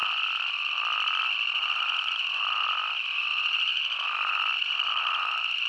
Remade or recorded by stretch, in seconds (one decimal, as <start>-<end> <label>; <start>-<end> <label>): 0.0-5.7 recorded

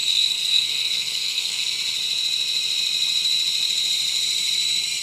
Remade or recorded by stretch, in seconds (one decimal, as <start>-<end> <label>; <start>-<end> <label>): 0.0-1.7 remade; 1.7-5.0 recorded